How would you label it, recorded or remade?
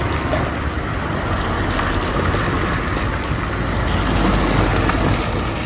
recorded